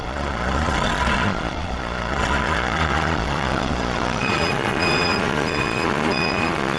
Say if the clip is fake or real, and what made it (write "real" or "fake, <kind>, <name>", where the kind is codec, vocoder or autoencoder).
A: fake, vocoder, Vocos